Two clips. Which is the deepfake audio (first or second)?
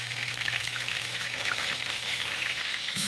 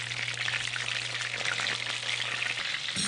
first